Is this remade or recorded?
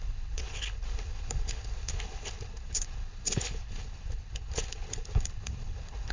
remade